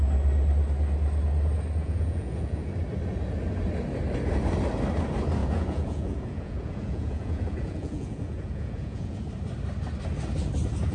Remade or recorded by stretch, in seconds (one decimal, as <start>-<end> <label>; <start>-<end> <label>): 0.0-1.8 recorded; 1.8-2.7 remade; 2.7-5.4 recorded; 5.4-9.2 remade; 9.2-10.9 recorded